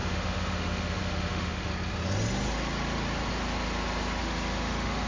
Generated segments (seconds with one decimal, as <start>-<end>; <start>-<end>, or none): 0.0-1.7; 4.2-5.1